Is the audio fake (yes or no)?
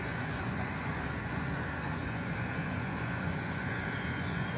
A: yes